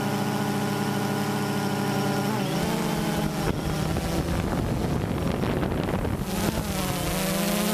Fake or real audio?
real